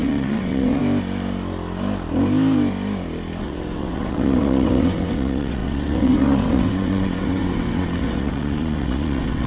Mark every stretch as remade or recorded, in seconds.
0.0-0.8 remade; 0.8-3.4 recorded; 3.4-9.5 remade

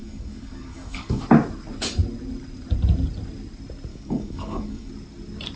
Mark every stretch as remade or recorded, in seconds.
0.0-1.2 remade; 1.2-3.9 recorded; 3.9-4.9 remade; 4.9-5.6 recorded

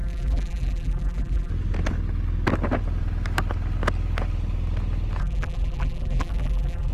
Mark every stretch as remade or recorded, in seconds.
0.0-1.5 remade; 1.5-5.2 recorded; 5.2-6.9 remade

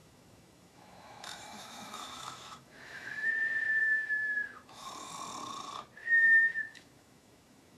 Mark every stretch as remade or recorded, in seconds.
0.0-3.3 remade; 3.3-3.8 recorded; 3.8-5.1 remade; 5.1-6.0 recorded; 6.0-7.8 remade

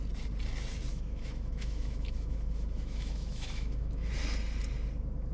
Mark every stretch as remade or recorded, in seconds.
0.0-0.9 recorded; 0.9-4.1 remade; 4.1-5.3 recorded

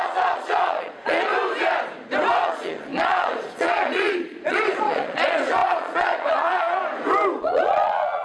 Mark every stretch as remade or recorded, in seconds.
0.0-1.3 remade; 1.3-2.4 recorded; 2.4-6.8 remade; 6.8-7.4 recorded; 7.4-8.2 remade

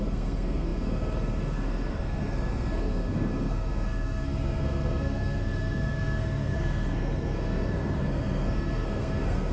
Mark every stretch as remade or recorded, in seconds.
0.0-9.5 remade

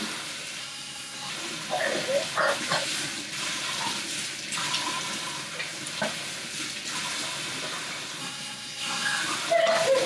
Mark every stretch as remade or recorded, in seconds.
0.0-0.6 recorded; 0.6-1.3 remade; 1.3-8.2 recorded; 8.2-9.2 remade; 9.2-10.1 recorded